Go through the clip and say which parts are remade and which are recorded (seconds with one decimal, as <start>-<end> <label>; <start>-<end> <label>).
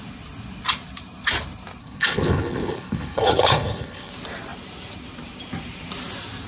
0.0-1.8 recorded; 1.8-4.1 remade; 4.1-6.5 recorded